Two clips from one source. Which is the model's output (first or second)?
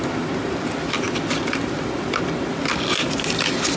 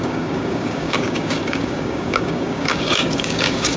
second